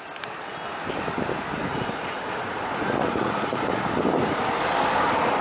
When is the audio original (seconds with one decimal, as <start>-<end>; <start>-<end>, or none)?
0.0-1.6; 3.8-5.4